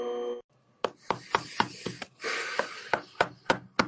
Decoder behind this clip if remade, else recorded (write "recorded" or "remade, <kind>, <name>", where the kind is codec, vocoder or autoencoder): recorded